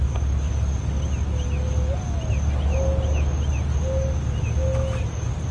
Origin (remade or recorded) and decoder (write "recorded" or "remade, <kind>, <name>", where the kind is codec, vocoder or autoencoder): recorded